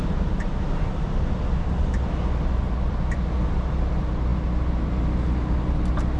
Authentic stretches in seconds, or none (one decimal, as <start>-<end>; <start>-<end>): 0.0-6.2